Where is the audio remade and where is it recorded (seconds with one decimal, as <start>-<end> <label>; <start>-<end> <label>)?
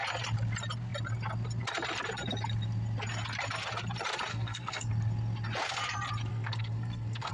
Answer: 0.0-4.3 recorded; 4.3-4.9 remade; 4.9-6.3 recorded; 6.3-7.3 remade